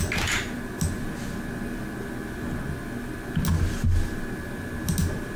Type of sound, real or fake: real